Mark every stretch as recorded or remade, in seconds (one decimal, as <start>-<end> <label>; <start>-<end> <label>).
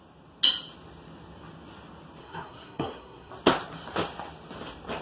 0.0-2.2 recorded; 2.2-3.3 remade; 3.3-5.0 recorded